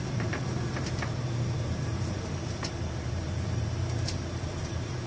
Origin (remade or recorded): remade